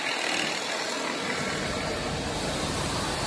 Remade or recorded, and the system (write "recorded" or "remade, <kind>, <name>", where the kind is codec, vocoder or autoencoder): recorded